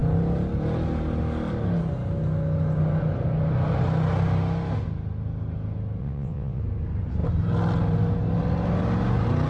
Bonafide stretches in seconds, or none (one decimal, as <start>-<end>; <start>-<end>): 0.0-6.0; 6.6-9.5